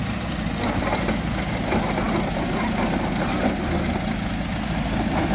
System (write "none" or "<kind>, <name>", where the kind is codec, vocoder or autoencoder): none